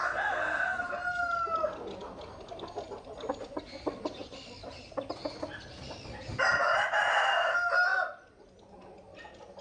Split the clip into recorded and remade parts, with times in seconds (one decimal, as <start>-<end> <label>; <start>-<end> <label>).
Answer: 0.0-0.8 remade; 0.8-9.6 recorded